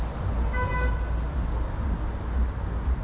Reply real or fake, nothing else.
real